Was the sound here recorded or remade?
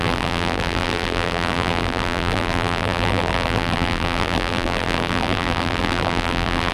remade